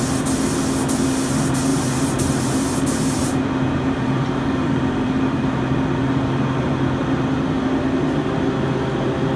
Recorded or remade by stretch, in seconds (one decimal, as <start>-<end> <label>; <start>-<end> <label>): 0.0-1.7 recorded; 1.7-5.6 remade; 5.6-6.0 recorded; 6.0-6.7 remade; 6.7-9.4 recorded